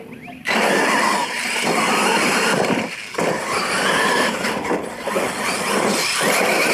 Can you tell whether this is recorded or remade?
recorded